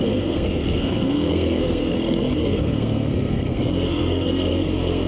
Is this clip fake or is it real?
fake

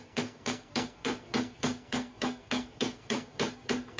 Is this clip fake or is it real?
fake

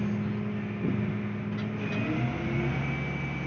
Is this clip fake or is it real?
real